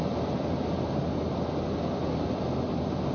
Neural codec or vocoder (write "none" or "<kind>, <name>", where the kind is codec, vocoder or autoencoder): none